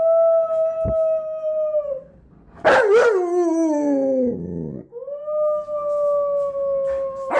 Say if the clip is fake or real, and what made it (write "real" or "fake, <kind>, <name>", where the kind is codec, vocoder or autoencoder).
real